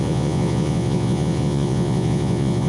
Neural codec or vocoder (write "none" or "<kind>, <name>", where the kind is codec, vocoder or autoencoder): vocoder, Vocos